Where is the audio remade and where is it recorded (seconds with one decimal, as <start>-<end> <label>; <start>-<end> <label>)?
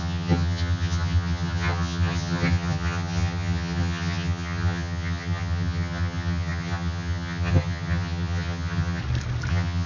0.0-9.0 remade; 9.0-9.5 recorded; 9.5-9.9 remade